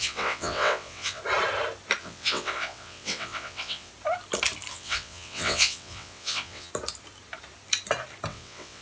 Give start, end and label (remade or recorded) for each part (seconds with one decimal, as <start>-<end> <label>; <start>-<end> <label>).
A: 0.0-1.2 remade; 1.2-2.0 recorded; 2.0-3.9 remade; 3.9-4.7 recorded; 4.7-6.7 remade; 6.7-8.3 recorded; 8.3-8.8 remade

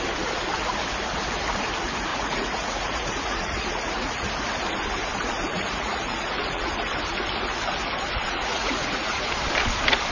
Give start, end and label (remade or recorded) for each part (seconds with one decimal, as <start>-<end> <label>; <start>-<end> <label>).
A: 0.0-2.1 recorded; 2.1-4.3 remade; 4.3-5.5 recorded; 5.5-6.7 remade; 6.7-8.2 recorded; 8.2-9.3 remade; 9.3-10.1 recorded

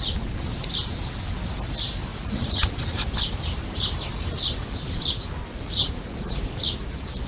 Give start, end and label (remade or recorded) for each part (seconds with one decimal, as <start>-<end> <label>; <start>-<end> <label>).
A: 0.0-2.1 recorded; 2.1-2.7 remade; 2.7-5.5 recorded; 5.5-6.4 remade; 6.4-7.3 recorded

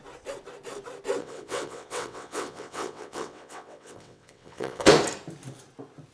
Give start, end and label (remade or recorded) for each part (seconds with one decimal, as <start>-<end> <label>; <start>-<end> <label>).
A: 0.0-1.2 recorded; 1.2-4.9 remade; 4.9-6.1 recorded